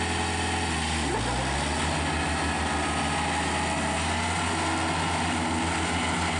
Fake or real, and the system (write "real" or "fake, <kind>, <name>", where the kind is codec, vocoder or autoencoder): real